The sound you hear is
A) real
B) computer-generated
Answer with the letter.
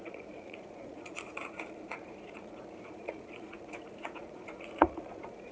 B